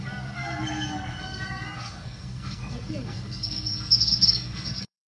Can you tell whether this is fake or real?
fake